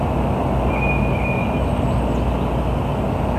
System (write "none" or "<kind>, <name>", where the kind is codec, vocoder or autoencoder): none